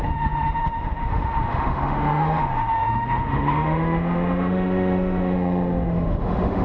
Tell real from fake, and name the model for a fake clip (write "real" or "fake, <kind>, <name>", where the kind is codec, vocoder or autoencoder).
fake, autoencoder, DAC-VAE